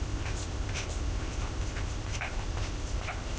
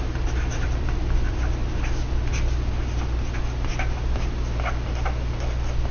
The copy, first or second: first